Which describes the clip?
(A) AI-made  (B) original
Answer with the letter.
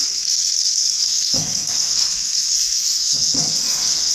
A